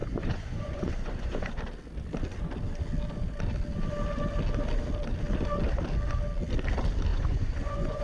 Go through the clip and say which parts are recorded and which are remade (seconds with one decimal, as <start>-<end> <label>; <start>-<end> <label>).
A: 0.0-1.5 remade; 1.5-7.1 recorded; 7.1-8.0 remade